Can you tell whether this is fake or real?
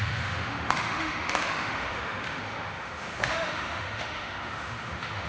fake